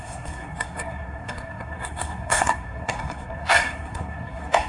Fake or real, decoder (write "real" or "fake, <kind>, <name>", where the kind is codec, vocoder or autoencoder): fake, codec, SNAC